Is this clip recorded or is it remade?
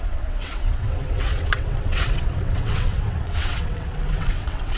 remade